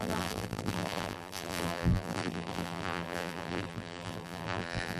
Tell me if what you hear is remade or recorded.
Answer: remade